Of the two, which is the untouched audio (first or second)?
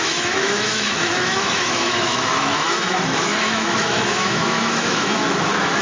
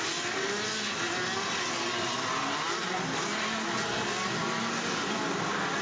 second